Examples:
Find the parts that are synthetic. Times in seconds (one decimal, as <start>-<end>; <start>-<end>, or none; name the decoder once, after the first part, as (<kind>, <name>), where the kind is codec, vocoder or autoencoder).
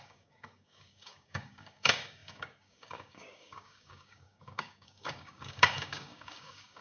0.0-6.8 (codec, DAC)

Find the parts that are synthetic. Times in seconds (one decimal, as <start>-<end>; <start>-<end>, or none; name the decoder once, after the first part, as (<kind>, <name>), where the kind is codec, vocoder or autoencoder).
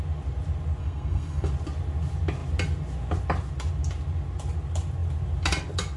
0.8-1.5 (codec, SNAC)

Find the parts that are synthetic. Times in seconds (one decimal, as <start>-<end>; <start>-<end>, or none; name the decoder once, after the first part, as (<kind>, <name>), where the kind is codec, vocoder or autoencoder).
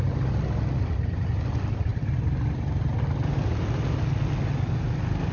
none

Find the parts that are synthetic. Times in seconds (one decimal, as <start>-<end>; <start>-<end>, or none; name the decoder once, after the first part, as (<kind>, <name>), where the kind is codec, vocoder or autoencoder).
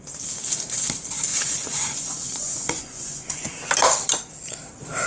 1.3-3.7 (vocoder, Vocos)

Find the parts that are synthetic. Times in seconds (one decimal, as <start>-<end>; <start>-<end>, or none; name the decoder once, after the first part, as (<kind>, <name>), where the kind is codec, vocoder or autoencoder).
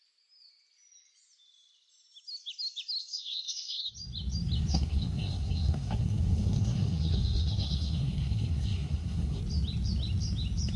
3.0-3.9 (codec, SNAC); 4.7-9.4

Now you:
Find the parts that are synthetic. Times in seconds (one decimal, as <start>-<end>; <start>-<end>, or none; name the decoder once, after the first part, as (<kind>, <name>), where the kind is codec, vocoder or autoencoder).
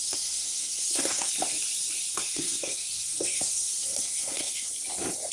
0.0-1.3 (codec, SNAC); 2.1-4.7